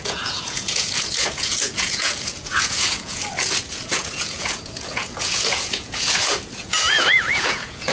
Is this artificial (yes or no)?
yes